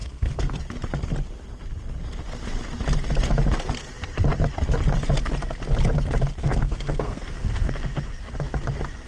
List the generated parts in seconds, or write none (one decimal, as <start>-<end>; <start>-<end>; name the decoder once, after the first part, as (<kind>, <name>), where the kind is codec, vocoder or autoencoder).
0.0-0.6 (codec, SNAC); 6.4-7.7